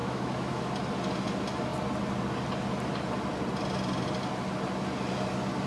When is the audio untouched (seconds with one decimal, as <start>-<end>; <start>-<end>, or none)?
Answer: 0.7-5.7

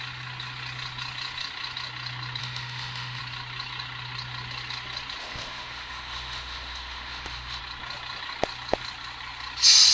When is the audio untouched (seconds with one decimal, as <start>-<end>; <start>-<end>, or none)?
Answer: 0.0-2.4; 3.2-5.2; 7.6-9.9

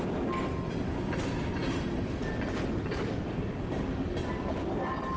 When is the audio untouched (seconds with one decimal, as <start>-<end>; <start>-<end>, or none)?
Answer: 0.0-5.2

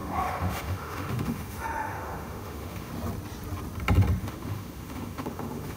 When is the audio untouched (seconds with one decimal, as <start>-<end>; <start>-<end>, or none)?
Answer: 2.9-4.2

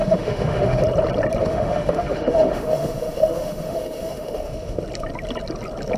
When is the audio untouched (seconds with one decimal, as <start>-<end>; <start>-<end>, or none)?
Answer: 0.8-1.4; 4.8-6.0

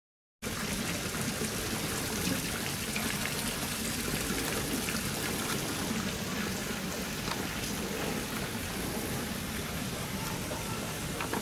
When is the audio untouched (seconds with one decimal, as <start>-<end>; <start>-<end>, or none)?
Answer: 0.0-11.4

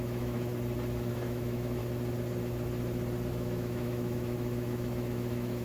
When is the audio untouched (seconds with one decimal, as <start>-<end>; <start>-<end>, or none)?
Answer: 0.5-1.1; 1.8-3.3

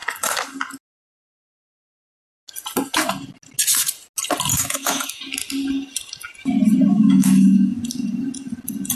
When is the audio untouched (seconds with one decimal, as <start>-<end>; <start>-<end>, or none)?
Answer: 0.0-4.5; 5.2-6.9; 7.8-9.0